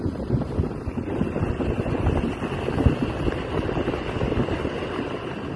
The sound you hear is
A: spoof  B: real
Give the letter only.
B